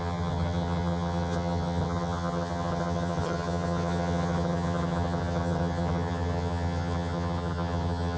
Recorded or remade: remade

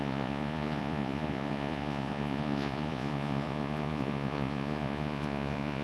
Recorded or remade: remade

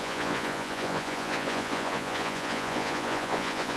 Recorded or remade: remade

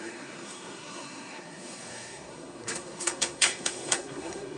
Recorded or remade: remade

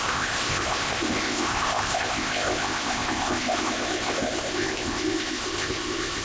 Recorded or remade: remade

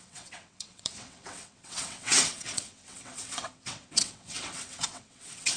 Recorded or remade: remade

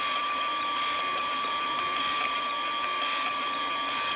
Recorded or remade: remade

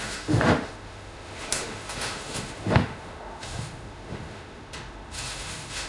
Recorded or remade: remade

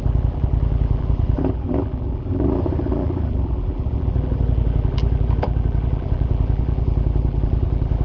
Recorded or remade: remade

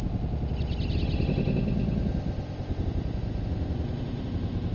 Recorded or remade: recorded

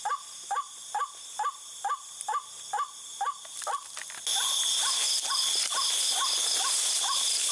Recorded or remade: recorded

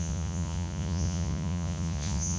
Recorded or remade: remade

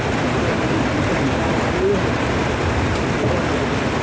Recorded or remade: recorded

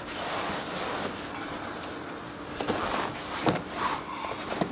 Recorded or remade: recorded